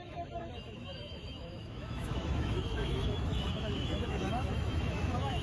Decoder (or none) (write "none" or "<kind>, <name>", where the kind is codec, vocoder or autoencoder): autoencoder, DAC-VAE